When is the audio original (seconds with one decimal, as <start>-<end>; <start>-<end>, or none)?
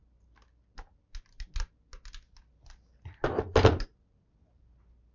0.0-5.1